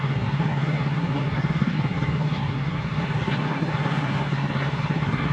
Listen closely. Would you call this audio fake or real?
fake